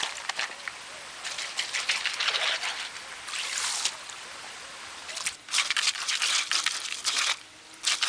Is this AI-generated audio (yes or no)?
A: no